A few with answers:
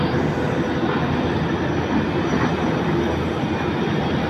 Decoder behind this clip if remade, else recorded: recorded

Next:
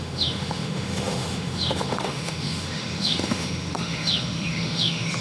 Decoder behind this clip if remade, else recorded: remade, autoencoder, DAC-VAE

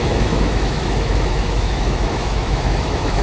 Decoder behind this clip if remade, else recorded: remade, autoencoder, DAC-VAE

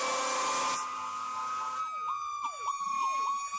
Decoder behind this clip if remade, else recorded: recorded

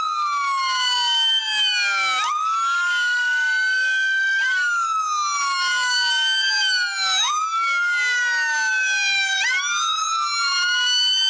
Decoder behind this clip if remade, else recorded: recorded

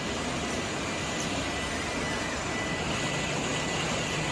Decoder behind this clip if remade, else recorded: recorded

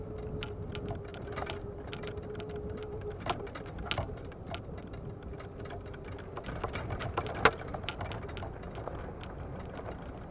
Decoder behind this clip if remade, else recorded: recorded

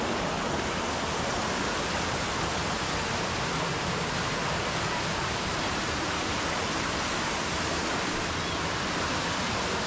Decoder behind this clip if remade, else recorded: recorded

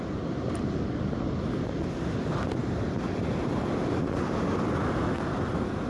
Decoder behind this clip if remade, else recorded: recorded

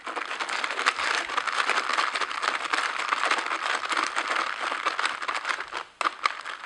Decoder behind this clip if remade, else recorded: recorded